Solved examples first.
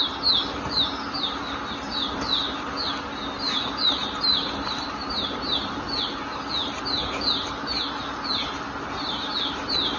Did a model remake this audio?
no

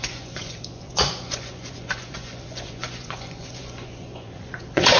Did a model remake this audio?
yes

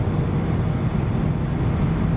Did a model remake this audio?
no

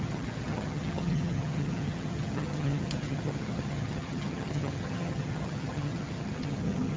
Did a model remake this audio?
yes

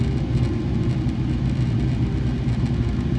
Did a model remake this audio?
no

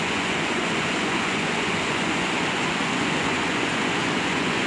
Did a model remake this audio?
yes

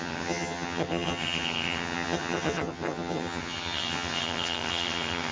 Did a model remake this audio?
yes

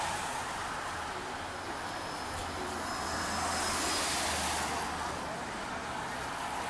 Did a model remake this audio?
no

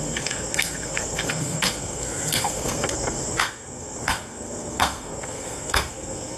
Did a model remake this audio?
yes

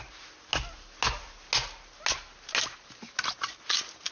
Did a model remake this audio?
no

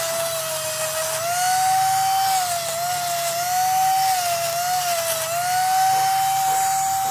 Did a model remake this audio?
no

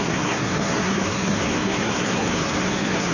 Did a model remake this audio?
yes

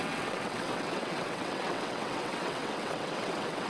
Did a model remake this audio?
yes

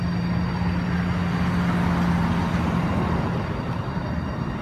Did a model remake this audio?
no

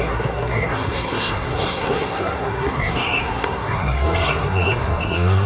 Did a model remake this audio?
yes